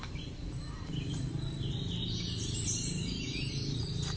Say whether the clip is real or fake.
real